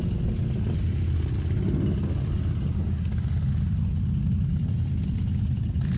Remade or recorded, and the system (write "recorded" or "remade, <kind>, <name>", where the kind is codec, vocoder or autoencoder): recorded